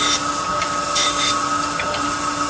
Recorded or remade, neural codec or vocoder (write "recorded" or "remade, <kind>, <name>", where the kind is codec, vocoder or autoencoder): recorded